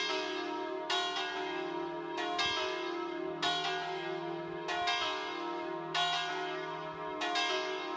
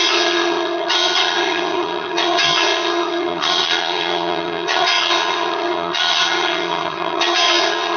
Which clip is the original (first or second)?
first